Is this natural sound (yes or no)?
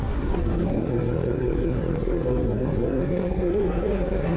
no